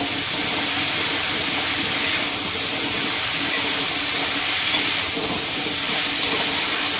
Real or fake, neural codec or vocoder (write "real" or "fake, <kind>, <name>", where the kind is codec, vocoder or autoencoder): real